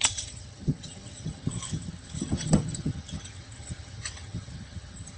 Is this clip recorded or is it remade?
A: remade